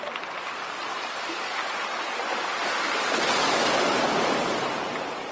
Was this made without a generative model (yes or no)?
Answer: yes